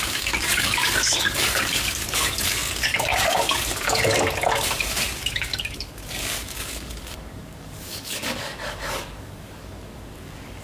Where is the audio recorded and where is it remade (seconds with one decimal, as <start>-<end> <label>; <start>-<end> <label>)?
0.0-10.6 remade